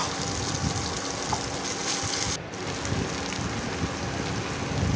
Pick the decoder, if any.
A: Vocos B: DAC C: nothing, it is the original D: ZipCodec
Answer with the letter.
C